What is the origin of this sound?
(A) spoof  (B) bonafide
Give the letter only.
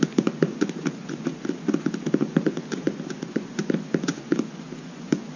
A